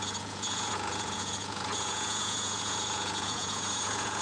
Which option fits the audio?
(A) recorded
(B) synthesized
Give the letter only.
B